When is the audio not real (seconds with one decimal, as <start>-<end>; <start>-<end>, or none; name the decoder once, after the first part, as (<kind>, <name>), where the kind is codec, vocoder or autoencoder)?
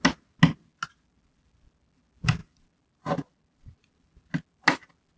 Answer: none